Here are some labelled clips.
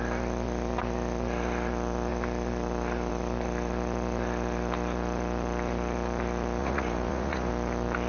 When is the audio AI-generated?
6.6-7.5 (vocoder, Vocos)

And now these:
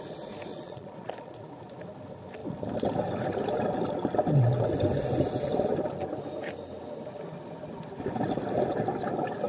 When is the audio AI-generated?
0.5-1.5 (vocoder, Vocos)